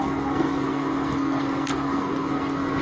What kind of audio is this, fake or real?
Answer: fake